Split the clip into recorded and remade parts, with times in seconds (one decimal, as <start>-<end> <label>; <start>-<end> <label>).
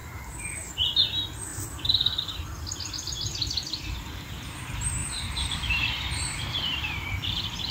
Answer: 0.0-5.0 recorded; 5.0-7.7 remade